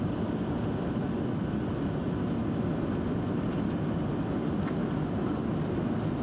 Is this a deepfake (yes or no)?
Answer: no